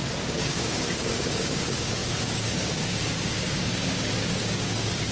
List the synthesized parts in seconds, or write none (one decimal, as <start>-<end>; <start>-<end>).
0.0-5.1